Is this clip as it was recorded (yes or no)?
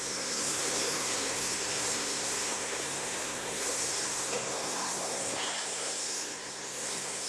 no